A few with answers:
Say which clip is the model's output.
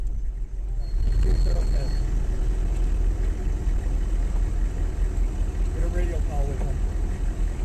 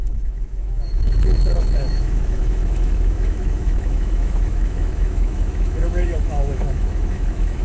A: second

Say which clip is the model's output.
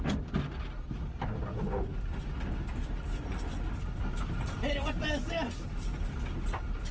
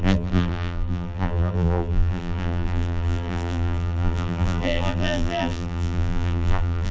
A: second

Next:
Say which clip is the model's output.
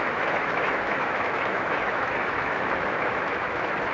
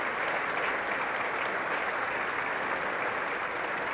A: first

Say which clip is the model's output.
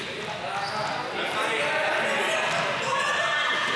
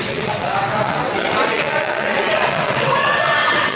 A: second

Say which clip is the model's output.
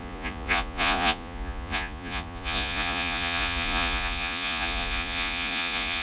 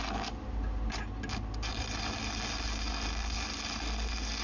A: first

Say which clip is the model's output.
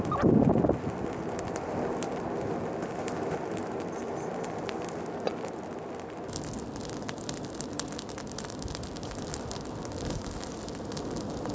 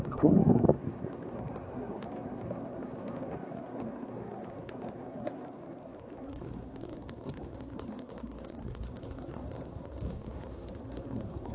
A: second